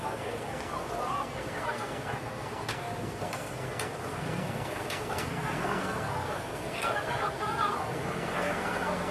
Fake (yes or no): yes